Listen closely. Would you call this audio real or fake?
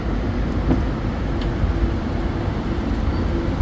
real